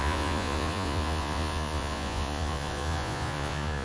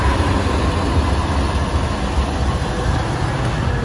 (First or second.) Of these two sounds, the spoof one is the first